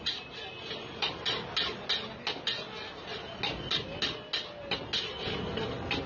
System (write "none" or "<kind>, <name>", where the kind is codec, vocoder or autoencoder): none